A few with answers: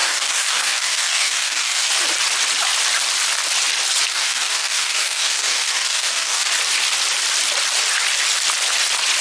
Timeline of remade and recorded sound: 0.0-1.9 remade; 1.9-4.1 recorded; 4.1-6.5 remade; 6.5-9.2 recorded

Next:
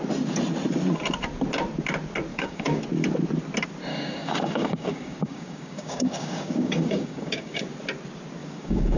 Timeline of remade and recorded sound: 0.0-2.3 recorded; 2.3-2.8 remade; 2.8-3.9 recorded; 3.9-7.6 remade; 7.6-8.4 recorded; 8.4-9.0 remade

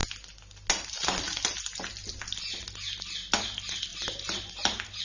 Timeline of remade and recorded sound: 0.0-5.0 recorded

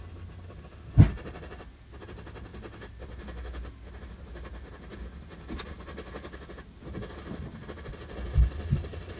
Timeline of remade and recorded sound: 0.0-9.2 recorded